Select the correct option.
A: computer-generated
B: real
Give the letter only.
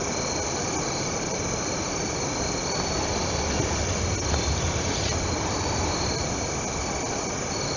B